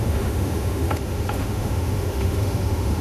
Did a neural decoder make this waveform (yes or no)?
yes